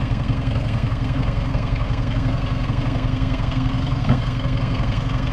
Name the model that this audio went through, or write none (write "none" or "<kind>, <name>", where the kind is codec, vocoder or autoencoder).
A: codec, SNAC